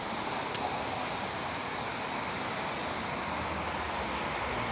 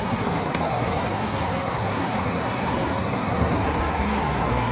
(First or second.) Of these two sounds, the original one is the first